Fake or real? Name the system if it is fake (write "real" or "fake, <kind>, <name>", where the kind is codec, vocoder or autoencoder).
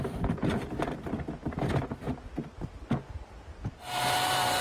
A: real